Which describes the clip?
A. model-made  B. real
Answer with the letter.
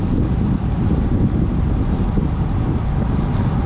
B